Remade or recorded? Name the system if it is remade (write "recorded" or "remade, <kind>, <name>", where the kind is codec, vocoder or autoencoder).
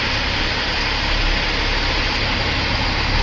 recorded